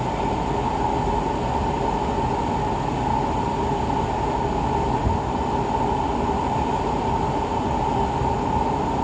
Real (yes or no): yes